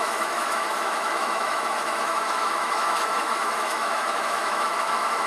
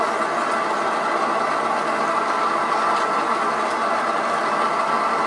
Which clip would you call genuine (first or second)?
second